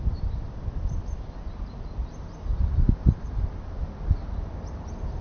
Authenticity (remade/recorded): recorded